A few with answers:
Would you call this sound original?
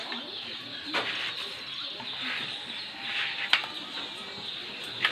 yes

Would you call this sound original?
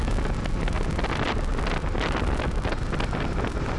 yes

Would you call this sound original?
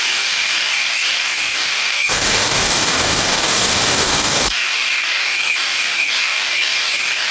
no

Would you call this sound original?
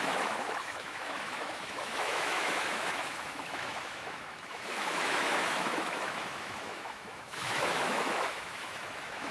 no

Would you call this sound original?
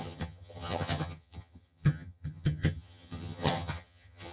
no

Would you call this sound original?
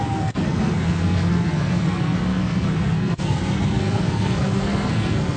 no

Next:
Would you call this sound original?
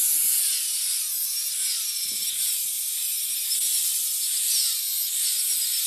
yes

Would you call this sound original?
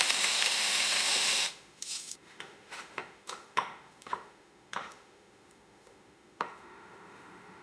no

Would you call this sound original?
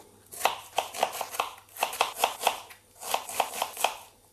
yes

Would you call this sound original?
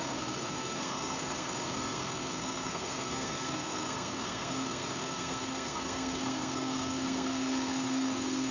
no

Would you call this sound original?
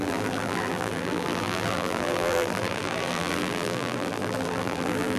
no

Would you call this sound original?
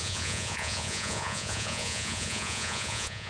no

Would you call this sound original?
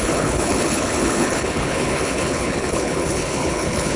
no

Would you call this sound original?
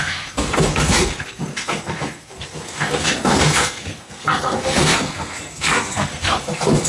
no